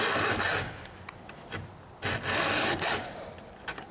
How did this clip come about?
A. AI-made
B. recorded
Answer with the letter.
B